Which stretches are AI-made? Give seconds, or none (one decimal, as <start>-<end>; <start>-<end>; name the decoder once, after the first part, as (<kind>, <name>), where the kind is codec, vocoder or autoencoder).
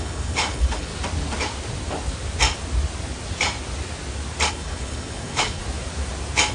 0.0-0.9 (codec, HILCodec); 4.5-5.6